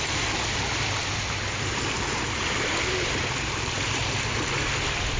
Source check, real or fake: real